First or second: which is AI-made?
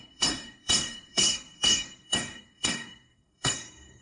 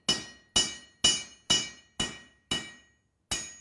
first